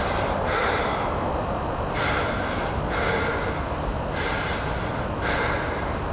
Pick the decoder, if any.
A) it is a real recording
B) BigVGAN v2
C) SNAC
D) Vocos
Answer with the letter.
A